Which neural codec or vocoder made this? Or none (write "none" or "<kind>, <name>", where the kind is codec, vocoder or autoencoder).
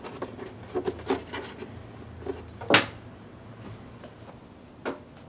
none